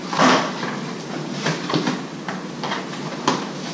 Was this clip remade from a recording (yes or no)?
no